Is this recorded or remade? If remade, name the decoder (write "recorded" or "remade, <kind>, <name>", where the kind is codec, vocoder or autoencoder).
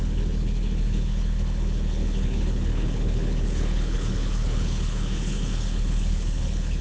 remade, codec, HILCodec